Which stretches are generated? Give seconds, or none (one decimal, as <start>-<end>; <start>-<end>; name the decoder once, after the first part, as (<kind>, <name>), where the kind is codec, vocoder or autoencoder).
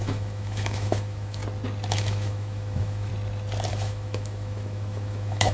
0.0-1.4 (autoencoder, DAC-VAE); 1.9-3.1; 3.7-5.5